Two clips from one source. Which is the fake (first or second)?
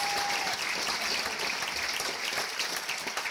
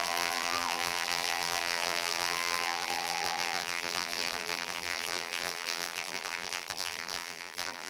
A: second